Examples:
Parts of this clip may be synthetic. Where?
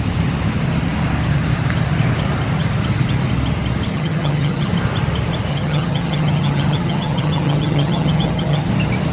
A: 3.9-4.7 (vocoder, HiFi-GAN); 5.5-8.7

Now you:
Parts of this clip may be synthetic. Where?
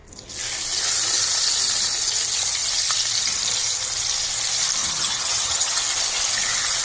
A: 4.8-5.8 (vocoder, HiFi-GAN)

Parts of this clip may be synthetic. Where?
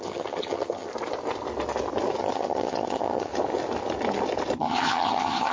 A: 0.0-0.9 (vocoder, HiFi-GAN); 2.2-3.3; 4.6-5.5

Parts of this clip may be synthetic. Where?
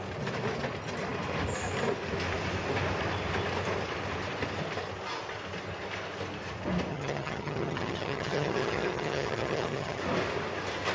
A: 6.9-10.0 (vocoder, HiFi-GAN)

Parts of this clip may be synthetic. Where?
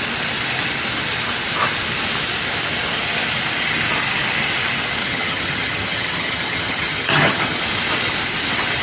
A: 5.0-7.6 (vocoder, HiFi-GAN)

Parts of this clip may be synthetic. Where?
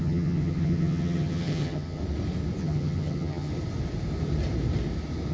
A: 0.0-2.0 (vocoder, HiFi-GAN); 2.6-3.5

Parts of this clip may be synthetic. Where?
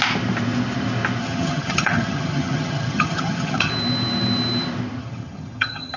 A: 1.2-3.7 (vocoder, HiFi-GAN); 5.0-6.0